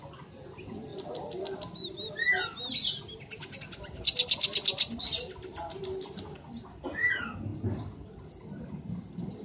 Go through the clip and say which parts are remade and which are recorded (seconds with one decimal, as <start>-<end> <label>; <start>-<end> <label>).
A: 0.0-9.4 recorded